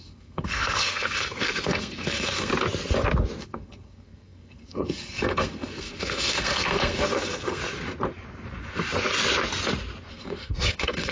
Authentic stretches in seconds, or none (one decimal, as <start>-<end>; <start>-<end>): 2.5-3.4; 7.6-10.1